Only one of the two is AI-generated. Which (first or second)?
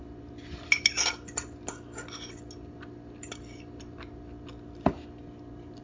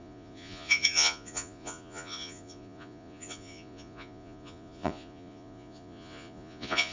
second